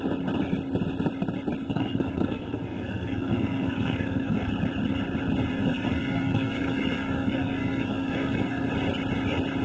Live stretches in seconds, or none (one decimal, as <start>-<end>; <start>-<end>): 0.0-1.6; 4.5-5.5; 8.7-9.6